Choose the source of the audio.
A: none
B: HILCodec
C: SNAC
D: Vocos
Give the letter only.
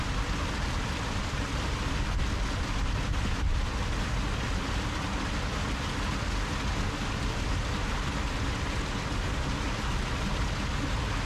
A